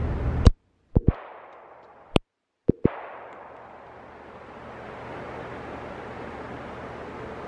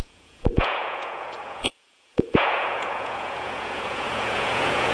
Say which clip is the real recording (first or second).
first